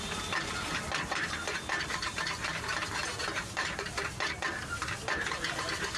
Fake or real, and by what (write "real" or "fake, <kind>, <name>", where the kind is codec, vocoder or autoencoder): fake, vocoder, BigVGAN v2